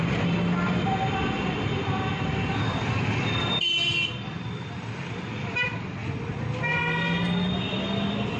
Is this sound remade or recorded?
recorded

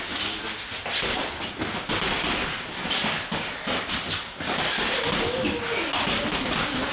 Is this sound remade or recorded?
recorded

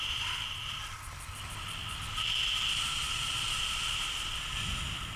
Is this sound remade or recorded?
recorded